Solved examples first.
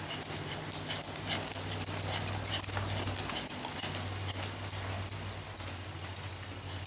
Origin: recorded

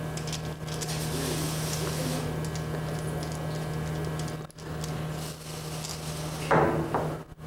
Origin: recorded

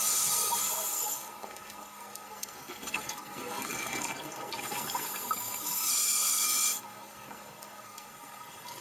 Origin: remade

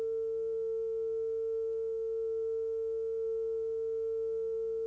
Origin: recorded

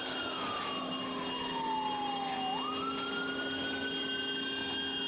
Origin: recorded